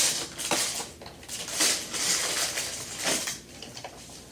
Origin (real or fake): real